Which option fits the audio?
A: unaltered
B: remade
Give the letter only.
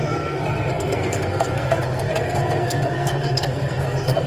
B